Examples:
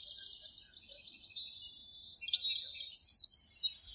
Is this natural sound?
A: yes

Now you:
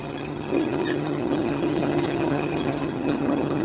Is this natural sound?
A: no